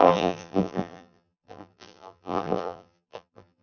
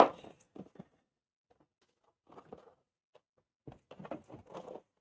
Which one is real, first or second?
second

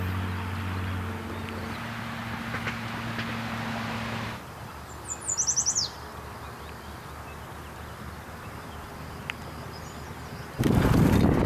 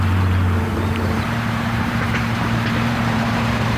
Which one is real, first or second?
first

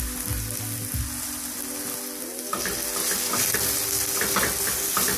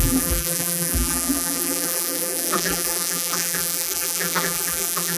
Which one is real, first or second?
first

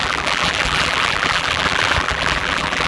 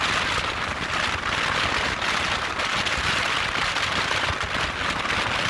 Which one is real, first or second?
second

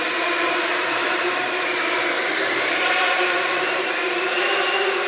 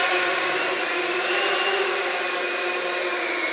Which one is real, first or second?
second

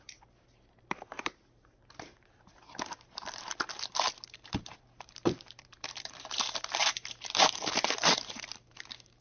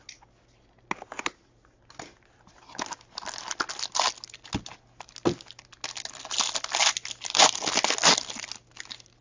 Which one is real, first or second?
second